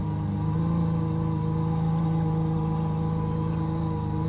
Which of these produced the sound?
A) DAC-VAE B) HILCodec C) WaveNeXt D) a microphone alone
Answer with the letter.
D